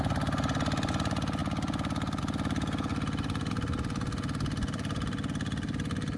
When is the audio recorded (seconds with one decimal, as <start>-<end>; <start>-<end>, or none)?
0.0-6.2